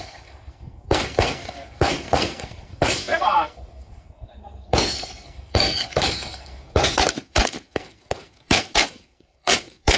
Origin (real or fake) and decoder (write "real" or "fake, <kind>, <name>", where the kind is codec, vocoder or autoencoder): fake, codec, SNAC